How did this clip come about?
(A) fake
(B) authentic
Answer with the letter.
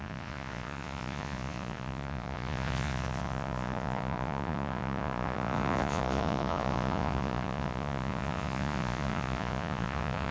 A